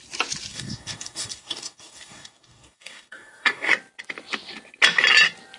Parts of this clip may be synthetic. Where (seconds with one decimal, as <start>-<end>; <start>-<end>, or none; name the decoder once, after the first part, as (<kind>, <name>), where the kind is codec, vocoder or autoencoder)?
0.5-3.7 (codec, DAC)